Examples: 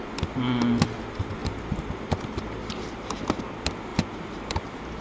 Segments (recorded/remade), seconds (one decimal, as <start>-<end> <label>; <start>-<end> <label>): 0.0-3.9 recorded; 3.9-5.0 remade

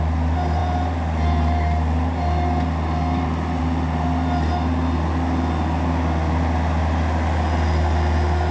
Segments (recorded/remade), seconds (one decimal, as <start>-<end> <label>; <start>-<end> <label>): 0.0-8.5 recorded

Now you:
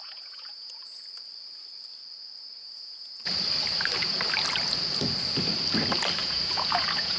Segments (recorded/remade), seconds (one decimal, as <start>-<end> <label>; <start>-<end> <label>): 0.0-1.0 remade; 1.0-2.5 recorded; 2.5-3.2 remade; 3.2-6.2 recorded; 6.2-7.2 remade

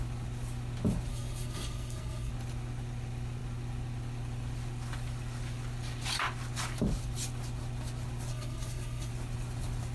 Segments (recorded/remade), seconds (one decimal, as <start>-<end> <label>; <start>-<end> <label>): 0.0-1.1 recorded; 1.1-2.3 remade; 2.3-8.3 recorded; 8.3-9.1 remade; 9.1-9.9 recorded

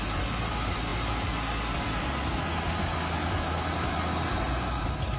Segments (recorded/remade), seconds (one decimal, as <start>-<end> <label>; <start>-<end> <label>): 0.0-5.2 recorded